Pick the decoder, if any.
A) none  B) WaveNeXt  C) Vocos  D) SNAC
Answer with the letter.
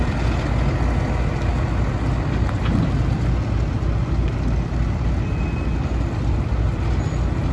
A